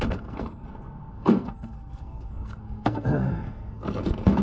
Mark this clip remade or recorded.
remade